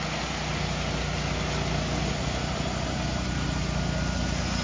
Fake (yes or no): no